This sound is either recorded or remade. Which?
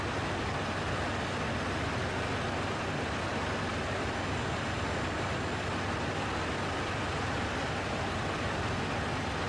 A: recorded